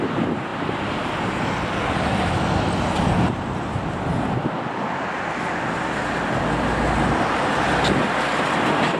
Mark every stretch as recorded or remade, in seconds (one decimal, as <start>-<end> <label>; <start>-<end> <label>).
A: 0.0-9.0 recorded